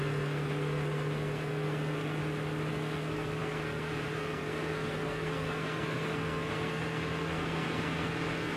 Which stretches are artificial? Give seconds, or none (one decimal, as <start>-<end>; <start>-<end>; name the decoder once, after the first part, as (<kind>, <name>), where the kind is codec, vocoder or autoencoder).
0.0-2.2 (codec, SNAC); 2.7-8.6